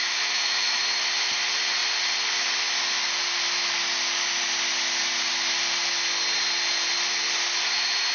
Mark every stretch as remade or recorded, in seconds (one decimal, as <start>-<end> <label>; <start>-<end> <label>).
0.0-0.8 remade; 0.8-8.1 recorded